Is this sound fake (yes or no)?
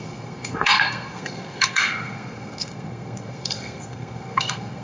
yes